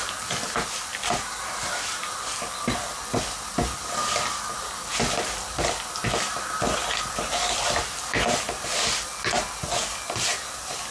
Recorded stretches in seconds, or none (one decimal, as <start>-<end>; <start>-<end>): 0.0-10.9